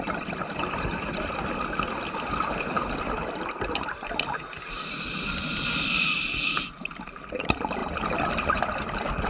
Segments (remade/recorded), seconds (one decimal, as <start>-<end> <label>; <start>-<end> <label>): 0.0-9.3 recorded